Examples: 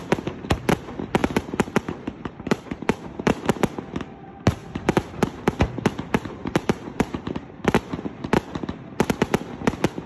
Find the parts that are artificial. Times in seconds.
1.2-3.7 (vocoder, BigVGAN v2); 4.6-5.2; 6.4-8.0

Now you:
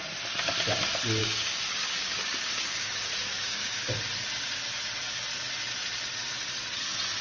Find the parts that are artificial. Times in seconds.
1.2-4.0 (codec, DAC)

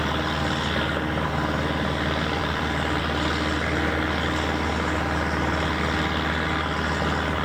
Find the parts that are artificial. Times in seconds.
2.4-3.0 (vocoder, BigVGAN v2)

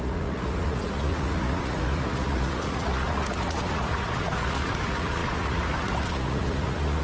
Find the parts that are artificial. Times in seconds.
0.0-7.0 (vocoder, Vocos)

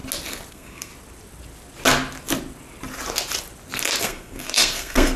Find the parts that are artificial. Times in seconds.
0.5-0.9 (codec, SNAC); 4.0-5.2

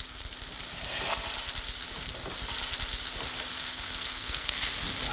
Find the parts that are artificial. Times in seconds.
3.5-4.6 (codec, SNAC)

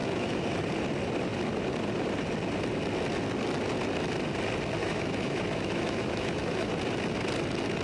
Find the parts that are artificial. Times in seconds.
0.0-0.6 (autoencoder, DAC-VAE); 4.8-6.7